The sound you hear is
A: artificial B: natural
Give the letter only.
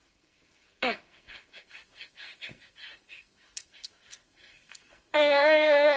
A